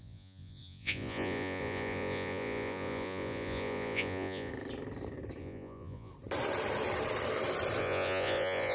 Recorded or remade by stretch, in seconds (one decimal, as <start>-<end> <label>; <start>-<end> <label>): 0.0-4.5 remade; 4.5-5.4 recorded; 5.4-6.1 remade; 6.1-7.8 recorded; 7.8-8.7 remade